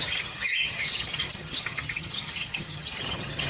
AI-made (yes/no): yes